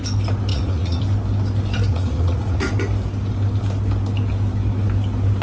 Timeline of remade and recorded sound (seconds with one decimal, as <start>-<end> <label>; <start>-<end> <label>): 0.0-0.5 recorded; 0.5-1.0 remade; 1.0-1.9 recorded; 1.9-2.6 remade; 2.6-5.4 recorded